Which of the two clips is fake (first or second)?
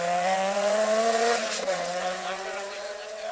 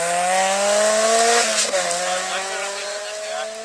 first